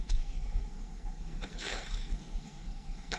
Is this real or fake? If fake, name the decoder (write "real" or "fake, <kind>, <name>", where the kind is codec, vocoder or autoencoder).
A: fake, codec, SNAC